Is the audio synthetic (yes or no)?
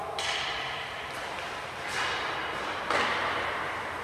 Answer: no